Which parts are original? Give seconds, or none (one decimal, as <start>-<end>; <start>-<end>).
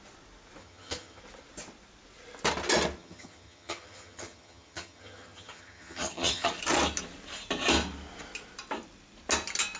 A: 0.0-0.6; 1.2-3.0; 6.6-9.8